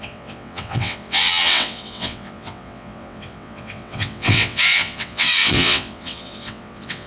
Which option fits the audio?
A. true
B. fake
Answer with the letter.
B